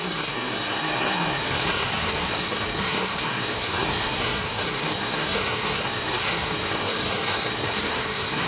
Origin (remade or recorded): remade